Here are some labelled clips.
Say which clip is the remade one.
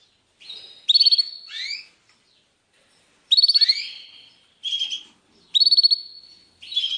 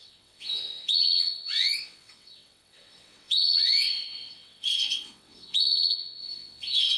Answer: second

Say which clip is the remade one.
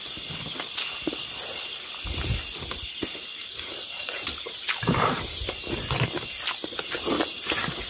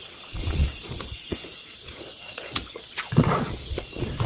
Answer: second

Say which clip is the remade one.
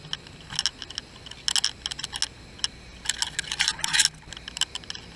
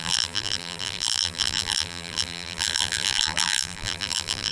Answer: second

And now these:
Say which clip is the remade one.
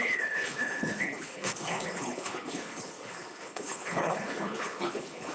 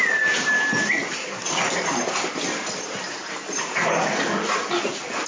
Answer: first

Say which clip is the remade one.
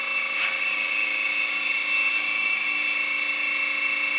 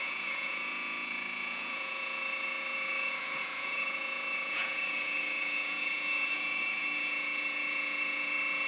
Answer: second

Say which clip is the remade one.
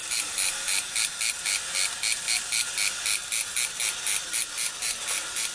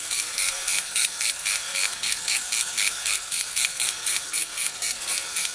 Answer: second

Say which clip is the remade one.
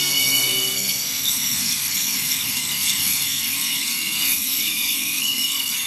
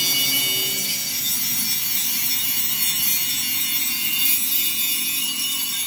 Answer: first